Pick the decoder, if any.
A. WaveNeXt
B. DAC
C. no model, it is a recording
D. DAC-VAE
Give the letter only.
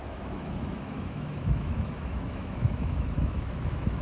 D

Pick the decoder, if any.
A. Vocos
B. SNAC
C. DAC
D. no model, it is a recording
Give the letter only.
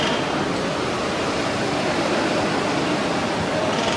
D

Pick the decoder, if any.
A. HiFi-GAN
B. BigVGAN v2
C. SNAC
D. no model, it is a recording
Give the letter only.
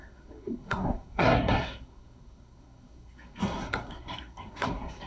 C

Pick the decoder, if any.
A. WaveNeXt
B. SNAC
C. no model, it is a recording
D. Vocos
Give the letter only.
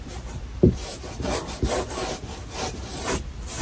C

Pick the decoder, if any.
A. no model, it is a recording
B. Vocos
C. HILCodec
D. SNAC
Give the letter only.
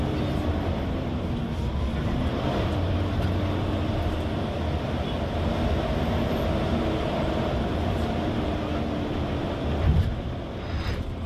A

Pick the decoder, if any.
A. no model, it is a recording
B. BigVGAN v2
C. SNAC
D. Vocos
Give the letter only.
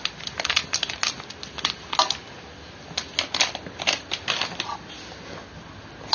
A